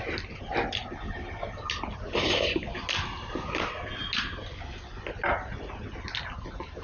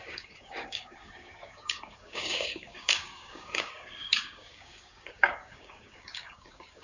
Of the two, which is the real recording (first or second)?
first